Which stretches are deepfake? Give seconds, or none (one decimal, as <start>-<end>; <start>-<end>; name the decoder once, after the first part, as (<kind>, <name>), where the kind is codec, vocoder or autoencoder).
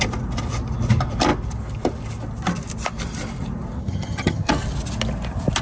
3.8-4.5 (vocoder, HiFi-GAN)